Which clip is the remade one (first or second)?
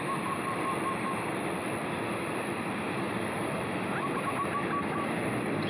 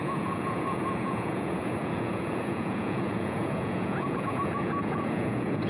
second